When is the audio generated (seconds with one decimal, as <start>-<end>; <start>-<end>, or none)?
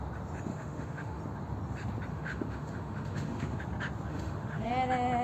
0.5-1.2; 2.1-3.6; 4.1-4.7